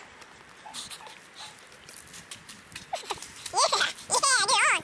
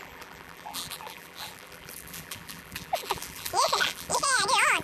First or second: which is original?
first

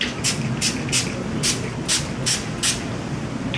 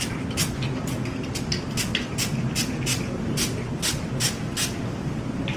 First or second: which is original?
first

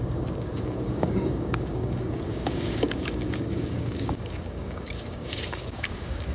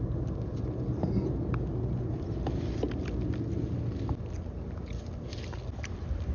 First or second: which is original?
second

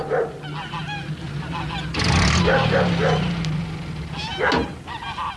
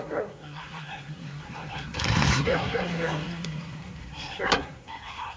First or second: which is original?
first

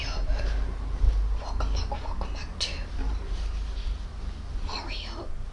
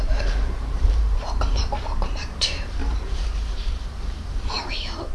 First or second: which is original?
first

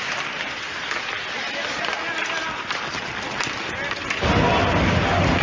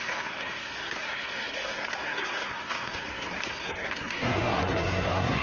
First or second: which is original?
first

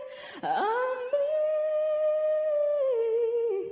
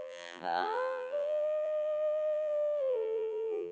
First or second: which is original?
first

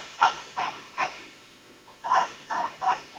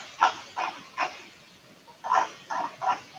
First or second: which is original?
second